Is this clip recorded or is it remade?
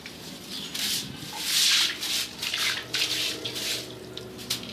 recorded